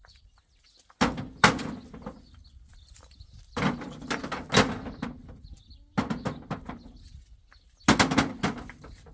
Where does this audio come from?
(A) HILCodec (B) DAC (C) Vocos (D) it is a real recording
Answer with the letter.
D